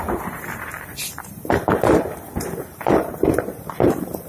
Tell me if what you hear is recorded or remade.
remade